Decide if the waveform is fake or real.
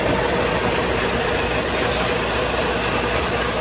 real